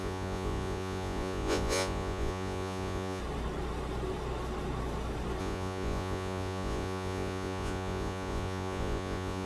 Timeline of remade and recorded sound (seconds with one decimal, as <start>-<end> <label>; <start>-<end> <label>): 0.0-3.2 remade; 3.2-5.4 recorded; 5.4-9.5 remade